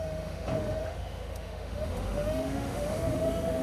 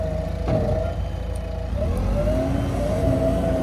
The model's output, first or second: first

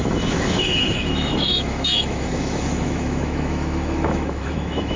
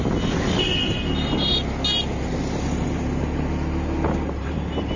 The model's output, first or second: first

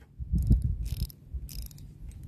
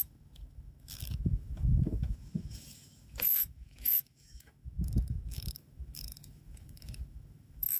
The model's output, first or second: second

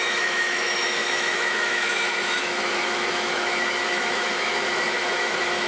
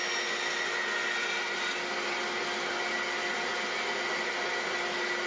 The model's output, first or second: first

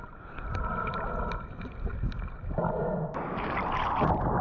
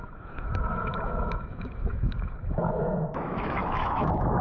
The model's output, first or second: second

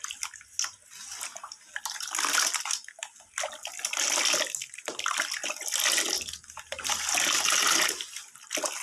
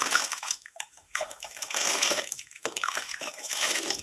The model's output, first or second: second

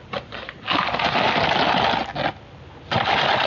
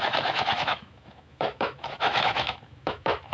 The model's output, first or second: second